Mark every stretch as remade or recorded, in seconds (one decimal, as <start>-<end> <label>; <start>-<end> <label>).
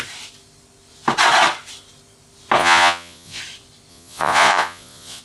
0.0-2.6 recorded; 2.6-3.4 remade; 3.4-3.9 recorded; 3.9-5.2 remade